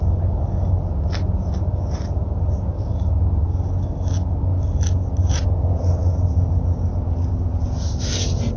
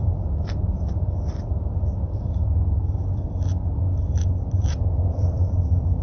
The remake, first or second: second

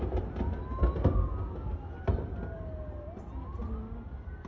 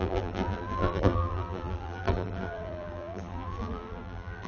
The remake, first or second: second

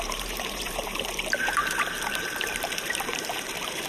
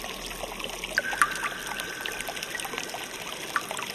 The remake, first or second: first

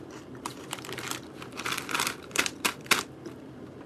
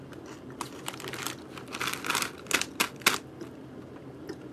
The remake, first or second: first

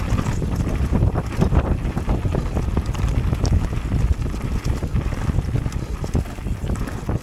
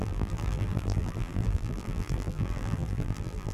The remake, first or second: second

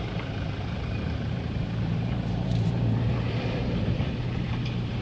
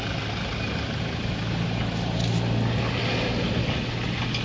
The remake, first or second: first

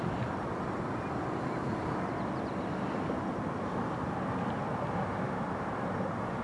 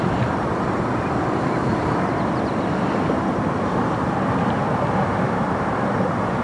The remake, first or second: second